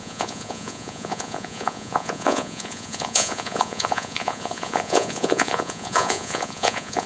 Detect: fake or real fake